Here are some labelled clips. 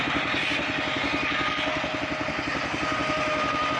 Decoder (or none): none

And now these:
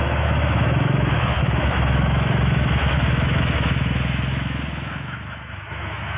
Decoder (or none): autoencoder, DAC-VAE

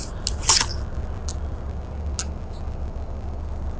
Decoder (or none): none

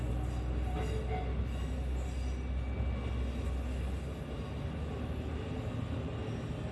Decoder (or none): none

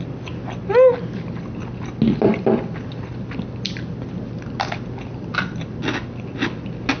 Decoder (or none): none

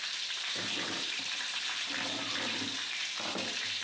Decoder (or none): vocoder, BigVGAN v2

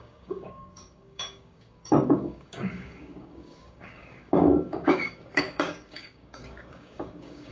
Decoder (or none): codec, DAC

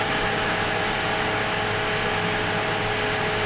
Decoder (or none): none